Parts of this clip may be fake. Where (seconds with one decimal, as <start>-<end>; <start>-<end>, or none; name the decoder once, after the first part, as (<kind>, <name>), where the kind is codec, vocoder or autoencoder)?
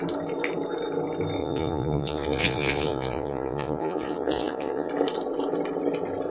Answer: 1.4-4.9 (vocoder, Vocos)